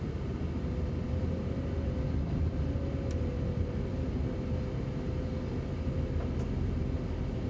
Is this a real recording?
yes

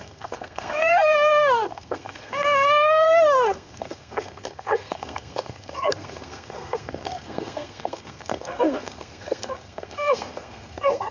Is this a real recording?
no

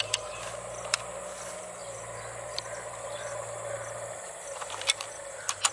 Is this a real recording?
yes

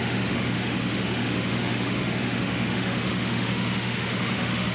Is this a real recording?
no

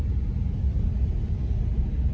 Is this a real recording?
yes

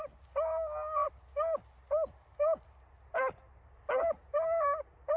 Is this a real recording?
yes